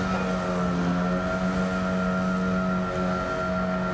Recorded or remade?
recorded